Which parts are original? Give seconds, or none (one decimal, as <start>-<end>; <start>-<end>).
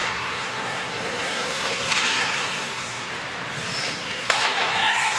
3.1-3.8